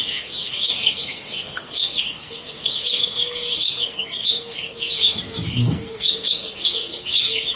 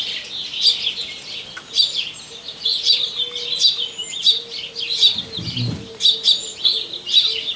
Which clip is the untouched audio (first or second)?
second